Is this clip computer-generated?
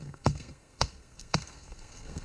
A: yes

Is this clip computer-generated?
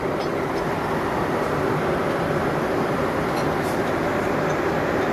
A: no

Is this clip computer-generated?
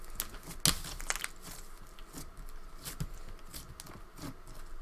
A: no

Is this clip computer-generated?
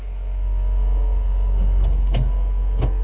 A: yes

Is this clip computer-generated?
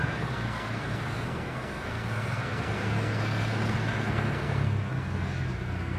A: yes